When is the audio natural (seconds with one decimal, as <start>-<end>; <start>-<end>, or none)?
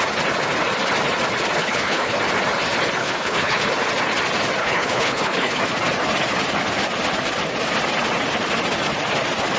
0.0-1.6; 2.2-3.0; 3.7-4.6; 5.6-9.6